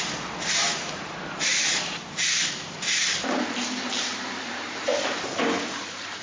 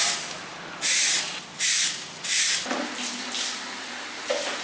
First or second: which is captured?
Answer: second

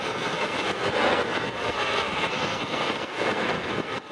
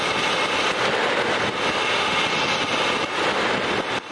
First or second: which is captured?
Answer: second